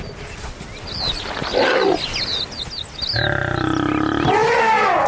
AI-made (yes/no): no